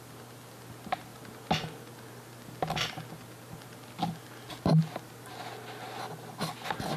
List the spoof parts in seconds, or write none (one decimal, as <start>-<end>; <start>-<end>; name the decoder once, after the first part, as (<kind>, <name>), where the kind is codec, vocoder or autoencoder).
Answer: none